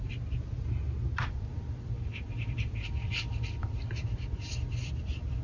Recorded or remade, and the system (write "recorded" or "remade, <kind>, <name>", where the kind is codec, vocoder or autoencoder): recorded